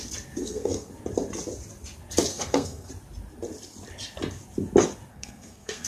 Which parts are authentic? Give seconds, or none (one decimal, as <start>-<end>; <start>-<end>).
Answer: 0.0-0.4; 0.9-2.3; 2.9-5.1